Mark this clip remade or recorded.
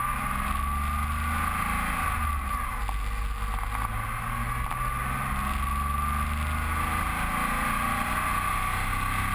recorded